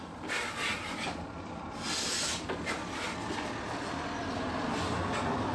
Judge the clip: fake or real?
real